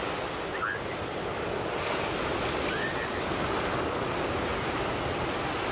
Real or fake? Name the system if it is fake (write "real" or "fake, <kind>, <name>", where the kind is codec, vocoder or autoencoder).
real